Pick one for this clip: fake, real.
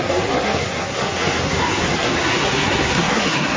fake